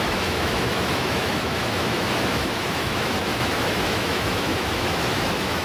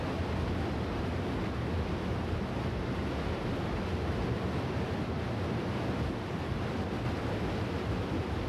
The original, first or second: second